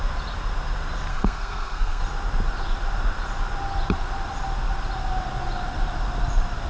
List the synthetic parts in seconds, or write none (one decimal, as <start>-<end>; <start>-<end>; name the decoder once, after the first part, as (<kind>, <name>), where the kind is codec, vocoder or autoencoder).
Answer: 1.1-2.0 (codec, SNAC)